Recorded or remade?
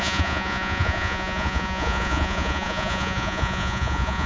remade